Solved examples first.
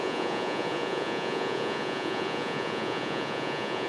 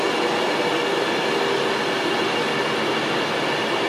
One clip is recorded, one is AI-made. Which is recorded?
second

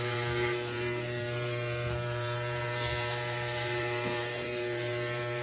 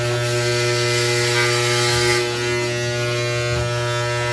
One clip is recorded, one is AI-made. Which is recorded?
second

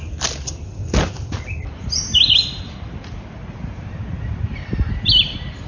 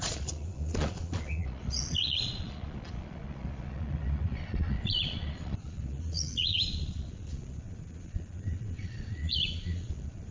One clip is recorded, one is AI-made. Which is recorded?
first